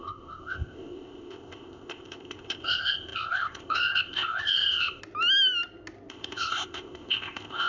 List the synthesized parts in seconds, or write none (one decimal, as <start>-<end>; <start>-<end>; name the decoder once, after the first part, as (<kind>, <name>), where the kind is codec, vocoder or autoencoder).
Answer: 0.0-5.0 (codec, ZipCodec); 6.1-7.7